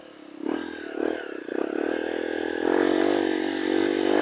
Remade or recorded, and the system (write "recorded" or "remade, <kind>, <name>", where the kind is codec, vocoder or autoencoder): recorded